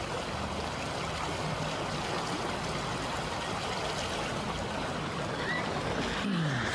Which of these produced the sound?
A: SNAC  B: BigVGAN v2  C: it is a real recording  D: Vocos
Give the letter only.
C